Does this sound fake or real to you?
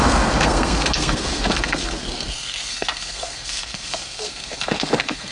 fake